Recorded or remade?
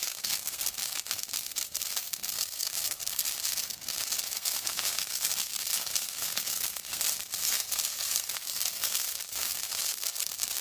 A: remade